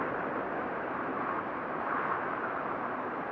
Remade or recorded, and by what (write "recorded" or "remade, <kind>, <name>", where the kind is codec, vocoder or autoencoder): recorded